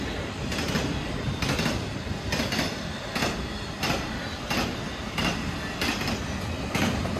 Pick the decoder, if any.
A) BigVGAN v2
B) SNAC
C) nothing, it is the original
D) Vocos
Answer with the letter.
C